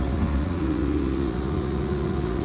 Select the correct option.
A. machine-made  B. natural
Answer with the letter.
A